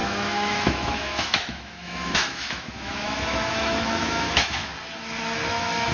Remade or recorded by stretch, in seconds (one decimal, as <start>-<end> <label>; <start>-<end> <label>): 0.0-4.7 remade; 4.7-5.5 recorded; 5.5-5.9 remade

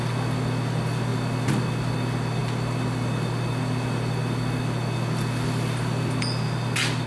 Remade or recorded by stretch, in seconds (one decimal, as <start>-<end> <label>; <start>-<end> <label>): 0.0-7.1 recorded